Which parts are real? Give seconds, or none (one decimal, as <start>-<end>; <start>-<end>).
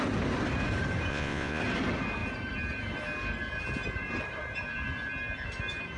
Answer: 0.0-1.1; 1.6-6.0